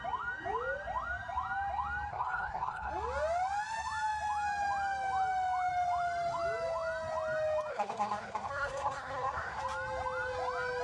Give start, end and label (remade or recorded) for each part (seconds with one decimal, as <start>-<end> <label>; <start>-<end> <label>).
0.0-2.1 recorded; 2.1-2.9 remade; 2.9-7.7 recorded; 7.7-9.6 remade; 9.6-10.8 recorded